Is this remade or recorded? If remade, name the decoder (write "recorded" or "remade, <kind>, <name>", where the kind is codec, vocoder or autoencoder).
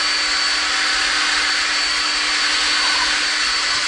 recorded